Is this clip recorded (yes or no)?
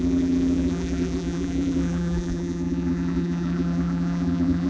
no